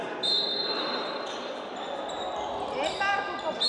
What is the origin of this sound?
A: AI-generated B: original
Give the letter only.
B